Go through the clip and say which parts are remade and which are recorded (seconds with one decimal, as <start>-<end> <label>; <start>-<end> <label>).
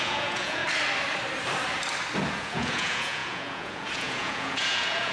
0.0-0.6 remade; 0.6-2.3 recorded; 2.3-5.1 remade